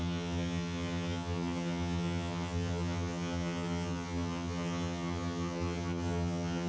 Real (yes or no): no